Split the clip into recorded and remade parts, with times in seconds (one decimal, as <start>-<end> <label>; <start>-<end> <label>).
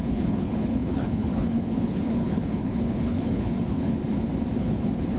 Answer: 0.0-4.0 remade; 4.0-4.6 recorded; 4.6-5.2 remade